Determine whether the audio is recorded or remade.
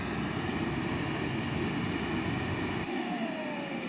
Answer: recorded